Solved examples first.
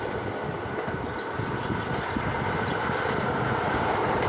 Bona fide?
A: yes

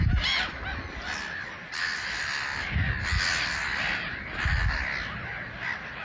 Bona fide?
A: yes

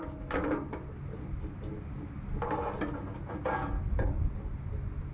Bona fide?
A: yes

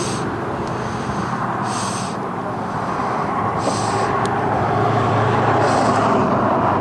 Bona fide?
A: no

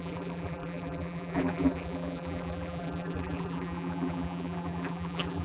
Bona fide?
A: no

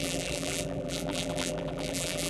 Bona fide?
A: no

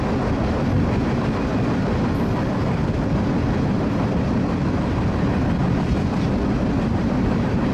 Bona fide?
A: yes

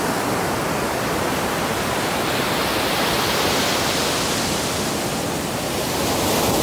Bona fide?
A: yes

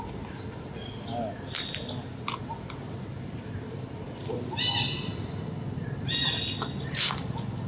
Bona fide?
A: yes